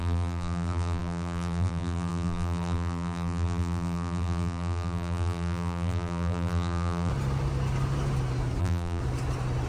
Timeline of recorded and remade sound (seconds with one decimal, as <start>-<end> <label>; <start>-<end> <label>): 0.0-7.1 remade; 7.1-8.6 recorded; 8.6-9.0 remade; 9.0-9.7 recorded